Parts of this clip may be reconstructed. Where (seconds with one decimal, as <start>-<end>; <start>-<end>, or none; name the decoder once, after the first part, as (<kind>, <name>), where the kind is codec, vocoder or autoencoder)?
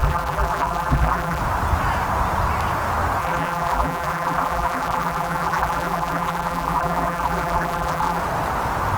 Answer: 0.0-1.4 (vocoder, BigVGAN v2); 3.2-8.2